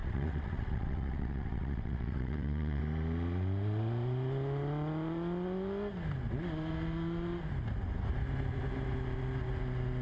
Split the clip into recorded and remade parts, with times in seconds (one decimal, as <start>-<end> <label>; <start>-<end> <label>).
0.0-2.8 remade; 2.8-10.0 recorded